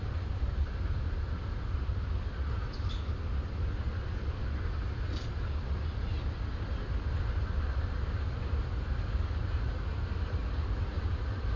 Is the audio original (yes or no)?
yes